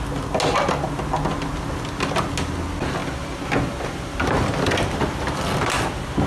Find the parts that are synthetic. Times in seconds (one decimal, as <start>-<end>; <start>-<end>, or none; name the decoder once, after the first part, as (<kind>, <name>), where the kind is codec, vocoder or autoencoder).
none